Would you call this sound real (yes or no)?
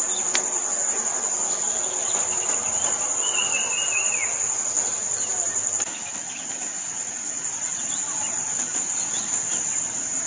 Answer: yes